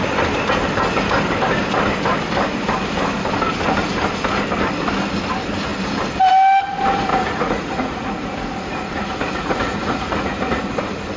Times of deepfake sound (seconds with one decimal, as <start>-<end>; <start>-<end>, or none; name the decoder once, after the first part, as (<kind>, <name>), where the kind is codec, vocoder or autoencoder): 7.1-10.7 (vocoder, Vocos)